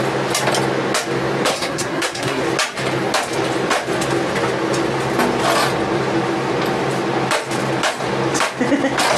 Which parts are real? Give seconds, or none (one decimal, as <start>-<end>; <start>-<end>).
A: 0.0-1.5; 2.4-9.2